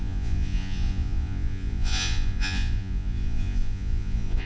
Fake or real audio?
fake